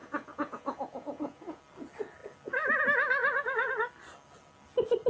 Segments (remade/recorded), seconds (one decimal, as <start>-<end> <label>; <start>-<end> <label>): 0.0-1.6 remade; 1.6-3.2 recorded; 3.2-3.7 remade; 3.7-5.1 recorded